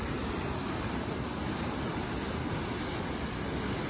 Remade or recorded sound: recorded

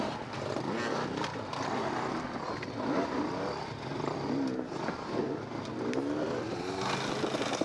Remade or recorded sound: recorded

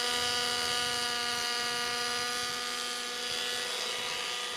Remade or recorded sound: recorded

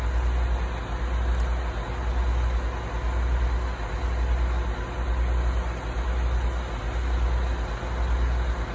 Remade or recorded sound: recorded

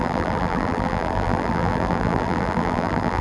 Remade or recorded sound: remade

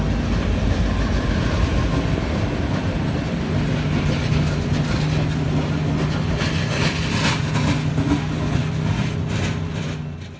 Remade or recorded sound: recorded